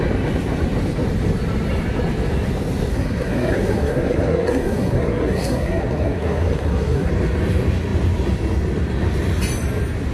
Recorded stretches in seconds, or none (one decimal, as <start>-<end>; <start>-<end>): 0.0-2.9; 7.1-10.1